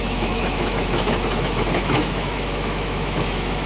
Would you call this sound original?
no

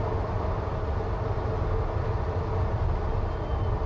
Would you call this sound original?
yes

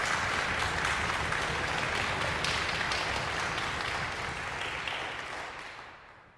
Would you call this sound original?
yes